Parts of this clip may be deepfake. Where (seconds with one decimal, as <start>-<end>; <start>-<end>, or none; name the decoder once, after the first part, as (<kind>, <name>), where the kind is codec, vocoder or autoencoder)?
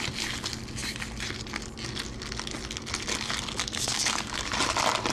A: 3.6-4.5 (codec, DAC)